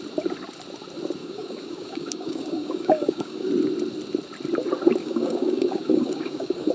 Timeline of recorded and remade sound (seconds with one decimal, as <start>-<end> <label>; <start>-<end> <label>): 0.0-1.2 recorded; 1.2-3.5 remade; 3.5-5.0 recorded; 5.0-6.7 remade